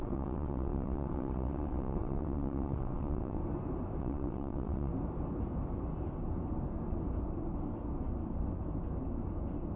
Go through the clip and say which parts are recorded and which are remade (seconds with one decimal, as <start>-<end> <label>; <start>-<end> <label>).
0.0-3.4 remade; 3.4-4.0 recorded; 4.0-4.9 remade; 4.9-9.8 recorded

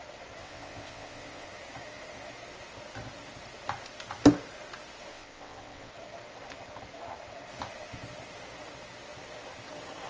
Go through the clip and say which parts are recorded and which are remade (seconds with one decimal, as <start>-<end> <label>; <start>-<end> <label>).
0.0-0.4 recorded; 0.4-1.5 remade; 1.5-5.1 recorded; 5.1-5.9 remade; 5.9-10.1 recorded